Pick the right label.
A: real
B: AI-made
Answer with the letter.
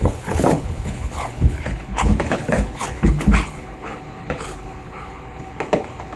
B